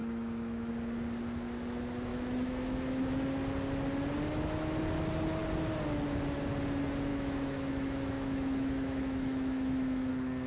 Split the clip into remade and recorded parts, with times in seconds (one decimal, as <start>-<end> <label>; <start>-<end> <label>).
0.0-0.7 remade; 0.7-2.1 recorded; 2.1-3.1 remade; 3.1-7.1 recorded; 7.1-10.1 remade; 10.1-10.5 recorded